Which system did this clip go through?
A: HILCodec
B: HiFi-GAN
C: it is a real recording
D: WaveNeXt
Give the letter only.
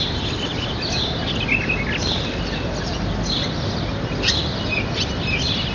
C